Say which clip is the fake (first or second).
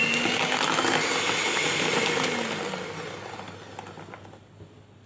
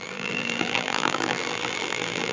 second